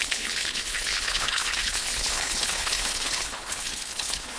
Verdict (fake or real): fake